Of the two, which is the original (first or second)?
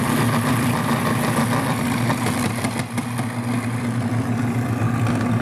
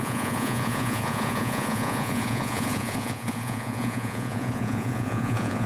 first